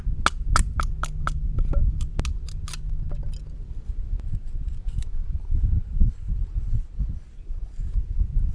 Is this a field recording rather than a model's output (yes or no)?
yes